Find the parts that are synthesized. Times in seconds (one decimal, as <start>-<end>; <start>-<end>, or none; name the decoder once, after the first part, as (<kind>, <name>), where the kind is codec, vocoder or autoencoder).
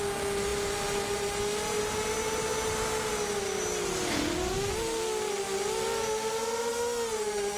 none